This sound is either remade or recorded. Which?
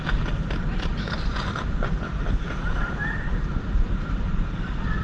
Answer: remade